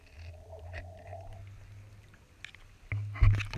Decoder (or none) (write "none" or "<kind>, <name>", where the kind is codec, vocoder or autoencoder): none